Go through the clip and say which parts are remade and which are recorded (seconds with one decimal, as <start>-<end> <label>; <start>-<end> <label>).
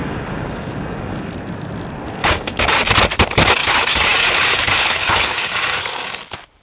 0.0-1.3 remade; 1.3-2.2 recorded; 2.2-2.9 remade; 2.9-3.6 recorded; 3.6-6.1 remade; 6.1-6.6 recorded